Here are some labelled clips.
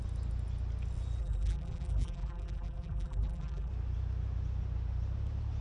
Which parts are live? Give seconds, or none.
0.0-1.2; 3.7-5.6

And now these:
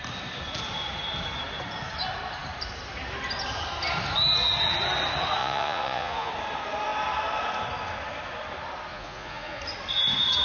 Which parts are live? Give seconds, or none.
0.0-5.4; 6.3-8.9; 9.6-10.4

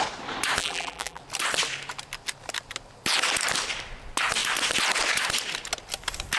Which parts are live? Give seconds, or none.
0.0-0.6; 1.2-6.4

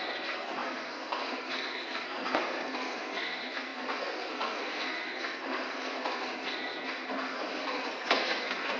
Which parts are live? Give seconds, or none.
none

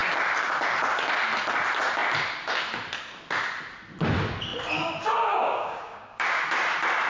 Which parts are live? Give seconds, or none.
0.0-5.3; 6.4-7.1

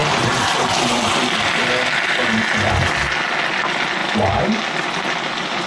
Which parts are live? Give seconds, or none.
2.2-4.0